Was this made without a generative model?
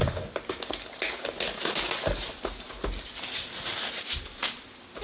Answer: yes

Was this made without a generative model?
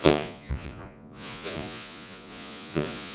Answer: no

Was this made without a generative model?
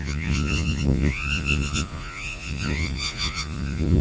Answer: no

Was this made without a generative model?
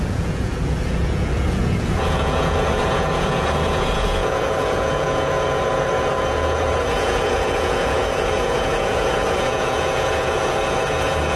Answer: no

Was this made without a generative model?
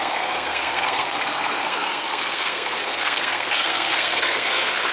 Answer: no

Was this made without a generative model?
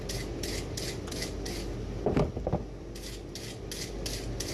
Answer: yes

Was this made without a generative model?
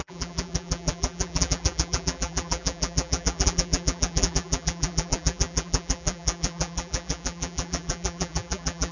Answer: no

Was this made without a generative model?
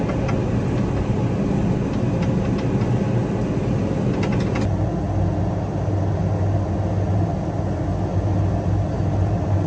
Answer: yes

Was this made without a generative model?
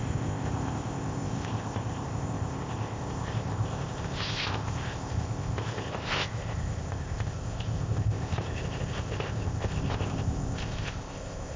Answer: no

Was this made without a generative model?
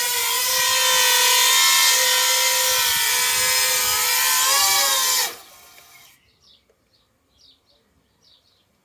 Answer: yes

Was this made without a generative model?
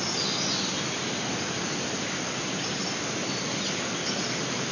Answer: yes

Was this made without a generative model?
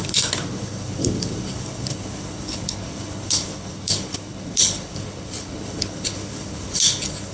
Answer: no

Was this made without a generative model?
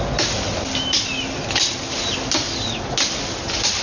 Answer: yes